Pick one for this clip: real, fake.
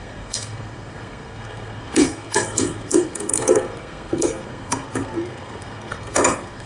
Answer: fake